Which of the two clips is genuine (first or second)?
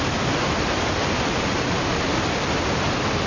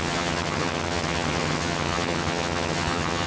first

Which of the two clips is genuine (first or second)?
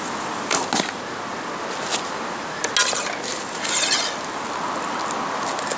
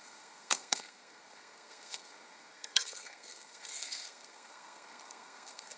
first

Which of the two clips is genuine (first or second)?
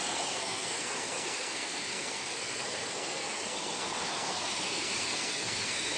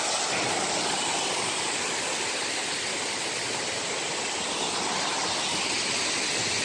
second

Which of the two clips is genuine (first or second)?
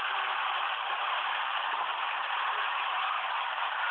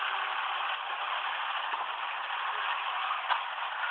second